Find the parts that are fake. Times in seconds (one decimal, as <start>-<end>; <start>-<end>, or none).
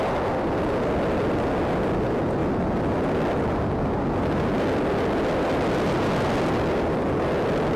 none